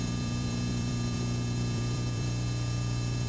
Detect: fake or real fake